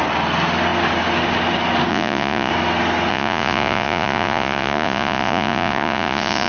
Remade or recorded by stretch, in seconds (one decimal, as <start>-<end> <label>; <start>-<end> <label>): 0.0-1.9 recorded; 1.9-2.5 remade; 2.5-3.1 recorded; 3.1-6.5 remade